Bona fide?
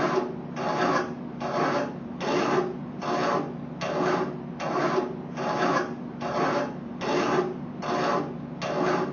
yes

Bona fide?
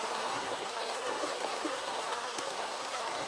no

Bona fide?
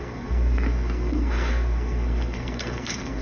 no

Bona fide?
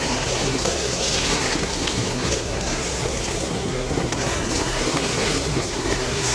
no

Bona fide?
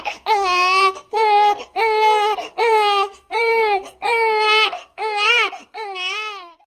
no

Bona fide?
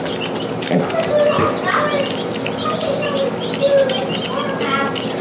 yes